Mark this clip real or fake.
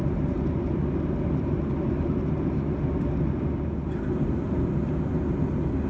real